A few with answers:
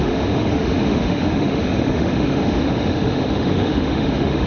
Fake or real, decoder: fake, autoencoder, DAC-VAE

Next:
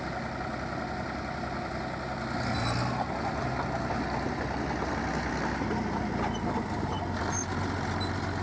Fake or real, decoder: real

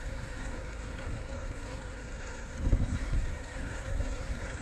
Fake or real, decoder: fake, codec, SNAC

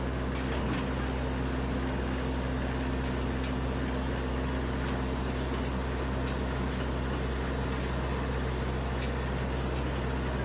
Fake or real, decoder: real